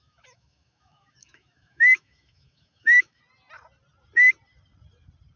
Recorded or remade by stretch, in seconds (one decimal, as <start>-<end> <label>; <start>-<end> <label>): 0.0-3.2 remade; 3.2-5.4 recorded